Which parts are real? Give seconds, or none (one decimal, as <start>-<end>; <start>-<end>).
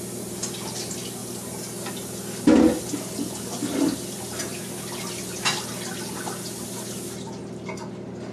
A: 0.0-8.3